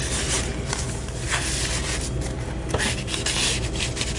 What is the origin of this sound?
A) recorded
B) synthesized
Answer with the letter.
A